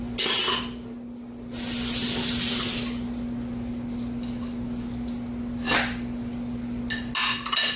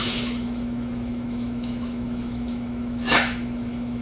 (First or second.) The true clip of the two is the first